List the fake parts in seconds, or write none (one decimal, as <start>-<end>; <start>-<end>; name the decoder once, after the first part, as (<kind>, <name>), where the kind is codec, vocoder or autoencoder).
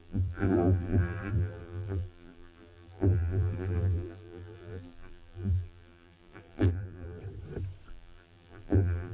0.0-7.2 (vocoder, BigVGAN v2); 7.9-9.1